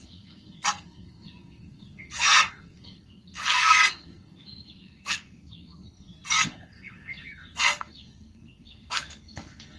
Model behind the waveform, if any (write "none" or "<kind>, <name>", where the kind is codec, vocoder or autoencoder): codec, SNAC